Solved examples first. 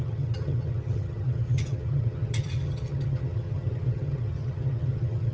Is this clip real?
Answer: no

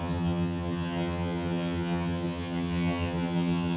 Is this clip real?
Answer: no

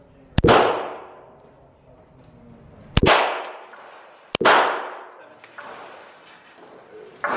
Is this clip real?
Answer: yes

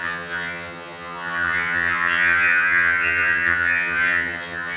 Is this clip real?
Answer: no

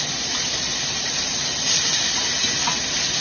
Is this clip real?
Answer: yes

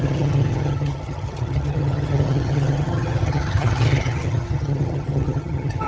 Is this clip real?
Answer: no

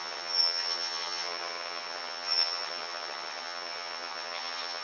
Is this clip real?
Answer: no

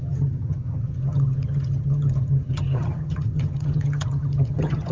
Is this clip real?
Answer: no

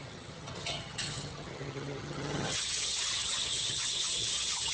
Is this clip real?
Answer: no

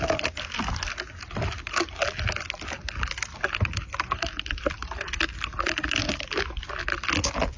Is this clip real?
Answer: yes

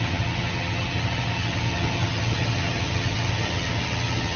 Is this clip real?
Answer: no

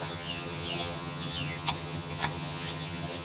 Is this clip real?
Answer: no